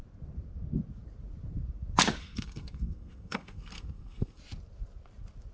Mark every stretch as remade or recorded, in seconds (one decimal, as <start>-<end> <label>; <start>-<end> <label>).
0.0-2.2 recorded; 2.2-4.4 remade; 4.4-5.5 recorded